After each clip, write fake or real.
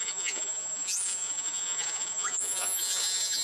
fake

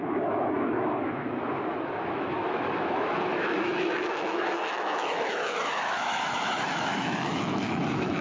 fake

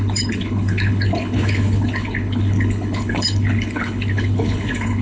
fake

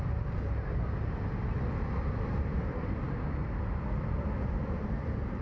real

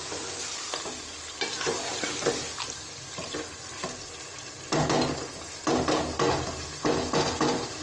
real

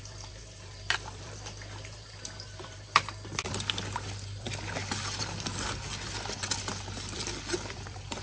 fake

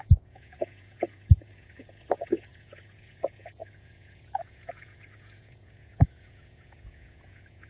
fake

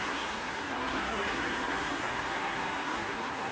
fake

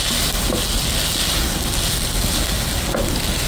real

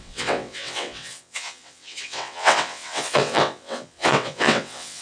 fake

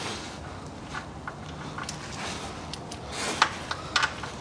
real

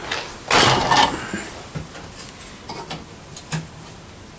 real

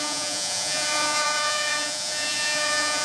fake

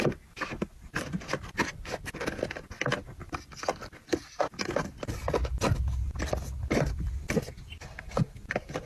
real